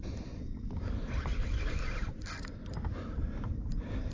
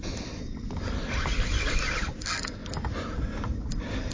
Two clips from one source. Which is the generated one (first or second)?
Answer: first